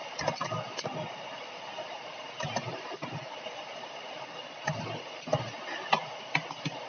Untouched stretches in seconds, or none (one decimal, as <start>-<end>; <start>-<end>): 0.0-6.9